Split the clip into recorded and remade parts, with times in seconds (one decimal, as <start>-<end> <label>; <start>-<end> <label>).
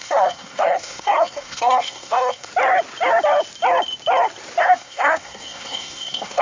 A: 0.0-2.5 remade; 2.5-4.6 recorded; 4.6-6.4 remade